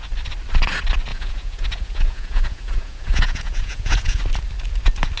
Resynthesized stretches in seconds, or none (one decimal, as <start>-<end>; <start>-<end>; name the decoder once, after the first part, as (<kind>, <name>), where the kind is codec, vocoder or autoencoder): 1.1-4.2 (vocoder, Vocos)

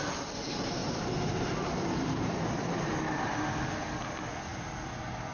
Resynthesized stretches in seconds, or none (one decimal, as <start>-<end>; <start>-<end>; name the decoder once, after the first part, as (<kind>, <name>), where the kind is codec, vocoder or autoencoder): none

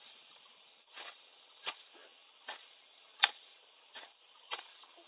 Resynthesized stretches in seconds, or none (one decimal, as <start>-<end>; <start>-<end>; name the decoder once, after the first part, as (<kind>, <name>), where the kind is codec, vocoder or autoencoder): 0.0-5.1 (vocoder, Vocos)

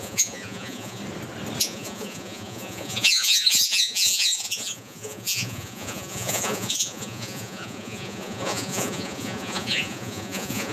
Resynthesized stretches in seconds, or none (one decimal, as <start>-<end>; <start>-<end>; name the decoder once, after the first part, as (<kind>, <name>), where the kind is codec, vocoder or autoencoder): 0.0-1.0 (vocoder, Vocos); 1.6-10.7

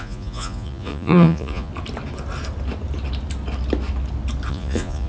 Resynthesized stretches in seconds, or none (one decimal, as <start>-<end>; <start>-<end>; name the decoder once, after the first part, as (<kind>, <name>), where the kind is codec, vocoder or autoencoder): 0.0-1.7 (vocoder, Vocos); 4.5-5.1

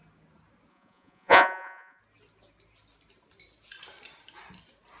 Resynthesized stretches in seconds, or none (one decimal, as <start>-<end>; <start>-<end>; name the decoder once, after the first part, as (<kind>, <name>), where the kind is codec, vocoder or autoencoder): 0.7-2.0 (vocoder, Vocos)

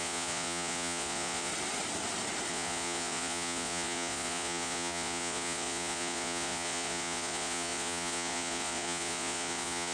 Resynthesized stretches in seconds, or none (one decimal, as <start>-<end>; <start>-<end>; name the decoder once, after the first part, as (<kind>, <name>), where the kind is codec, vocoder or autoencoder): 0.0-1.5 (vocoder, Vocos); 2.5-9.9